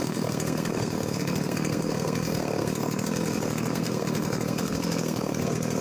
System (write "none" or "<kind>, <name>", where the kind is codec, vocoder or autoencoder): codec, SNAC